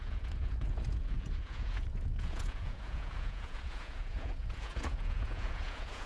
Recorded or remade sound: remade